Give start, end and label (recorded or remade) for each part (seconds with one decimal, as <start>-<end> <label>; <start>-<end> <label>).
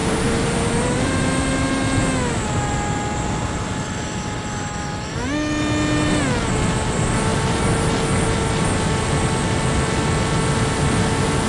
0.0-1.5 remade; 1.5-7.3 recorded; 7.3-7.9 remade; 7.9-11.5 recorded